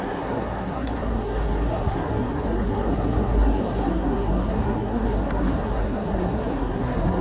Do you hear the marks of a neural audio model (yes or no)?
yes